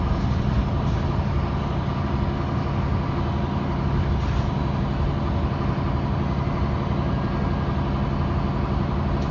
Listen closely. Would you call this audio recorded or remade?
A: recorded